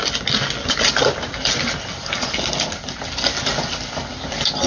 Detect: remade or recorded recorded